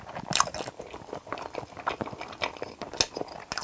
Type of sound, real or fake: real